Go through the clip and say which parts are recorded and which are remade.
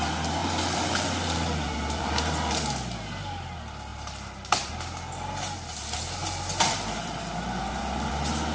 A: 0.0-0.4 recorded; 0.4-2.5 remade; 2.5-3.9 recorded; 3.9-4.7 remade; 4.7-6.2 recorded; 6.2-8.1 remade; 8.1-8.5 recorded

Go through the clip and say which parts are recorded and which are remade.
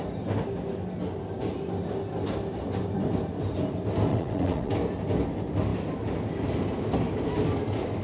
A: 0.0-4.1 recorded; 4.1-4.7 remade; 4.7-8.0 recorded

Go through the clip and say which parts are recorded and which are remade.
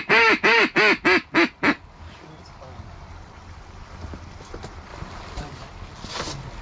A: 0.0-6.6 recorded